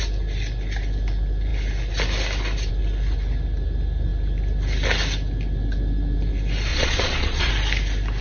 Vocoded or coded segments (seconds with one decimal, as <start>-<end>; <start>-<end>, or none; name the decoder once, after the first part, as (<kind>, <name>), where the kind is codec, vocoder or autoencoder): 6.7-7.5 (vocoder, Vocos)